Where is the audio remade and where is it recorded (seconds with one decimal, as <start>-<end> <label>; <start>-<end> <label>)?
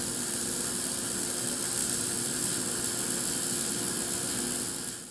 0.0-1.8 remade; 1.8-5.1 recorded